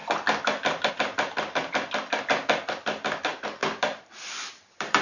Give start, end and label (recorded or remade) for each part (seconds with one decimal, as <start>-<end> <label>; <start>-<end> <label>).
0.0-5.0 recorded